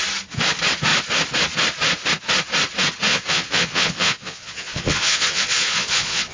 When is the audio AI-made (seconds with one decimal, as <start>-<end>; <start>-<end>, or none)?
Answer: 3.1-6.3